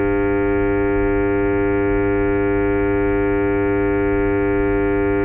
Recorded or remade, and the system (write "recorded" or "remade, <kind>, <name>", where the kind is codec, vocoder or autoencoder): recorded